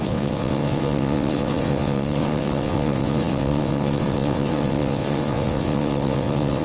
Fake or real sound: fake